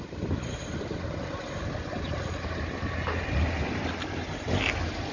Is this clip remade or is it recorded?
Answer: recorded